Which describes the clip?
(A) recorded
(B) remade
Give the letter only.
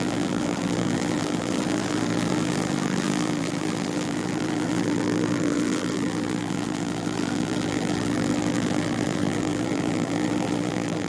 B